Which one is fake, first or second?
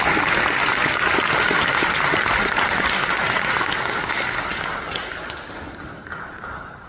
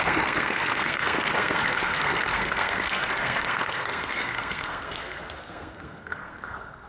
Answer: second